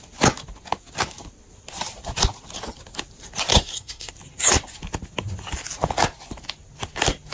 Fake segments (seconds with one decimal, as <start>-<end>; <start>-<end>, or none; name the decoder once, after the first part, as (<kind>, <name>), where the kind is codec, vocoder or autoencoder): 3.5-4.1 (codec, SNAC)